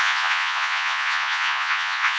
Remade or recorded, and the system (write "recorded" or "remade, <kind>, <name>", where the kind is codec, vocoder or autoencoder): remade, vocoder, Vocos